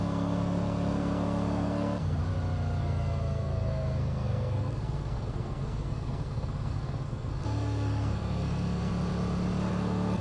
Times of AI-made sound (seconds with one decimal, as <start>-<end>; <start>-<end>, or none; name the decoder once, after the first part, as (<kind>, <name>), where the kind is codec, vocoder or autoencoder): 0.0-2.2 (codec, SNAC); 2.8-8.9; 9.7-10.2